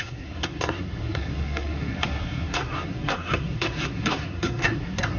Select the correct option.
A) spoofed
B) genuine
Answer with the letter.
A